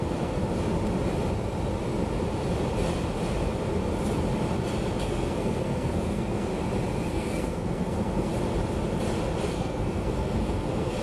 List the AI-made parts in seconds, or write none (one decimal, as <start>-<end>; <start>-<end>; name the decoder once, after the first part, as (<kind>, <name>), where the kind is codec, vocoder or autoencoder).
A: 0.0-0.4 (codec, SNAC); 5.0-6.5; 7.1-8.3; 9.5-11.0